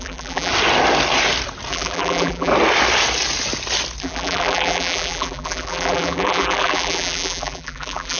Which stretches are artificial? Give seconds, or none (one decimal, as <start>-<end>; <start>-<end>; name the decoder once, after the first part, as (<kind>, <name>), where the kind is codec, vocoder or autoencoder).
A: 0.0-0.5 (vocoder, BigVGAN v2); 1.7-2.5; 4.0-8.2